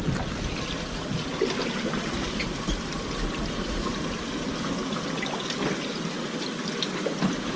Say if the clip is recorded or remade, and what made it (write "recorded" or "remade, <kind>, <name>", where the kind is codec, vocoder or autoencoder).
recorded